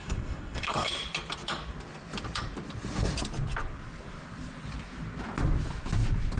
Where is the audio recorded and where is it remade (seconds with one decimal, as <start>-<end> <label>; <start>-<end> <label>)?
0.0-0.9 remade; 0.9-6.4 recorded